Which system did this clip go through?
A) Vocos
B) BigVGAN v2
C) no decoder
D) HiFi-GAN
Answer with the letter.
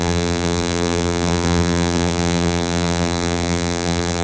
B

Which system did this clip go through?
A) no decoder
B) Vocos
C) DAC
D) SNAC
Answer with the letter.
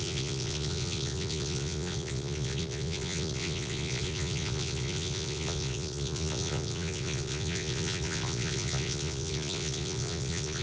B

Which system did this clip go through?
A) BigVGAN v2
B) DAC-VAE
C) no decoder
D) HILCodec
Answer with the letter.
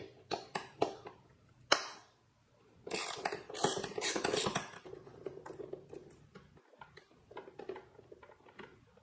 C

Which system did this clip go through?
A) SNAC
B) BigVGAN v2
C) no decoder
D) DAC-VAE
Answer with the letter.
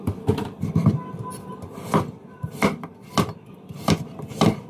B